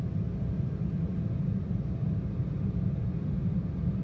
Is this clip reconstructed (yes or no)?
no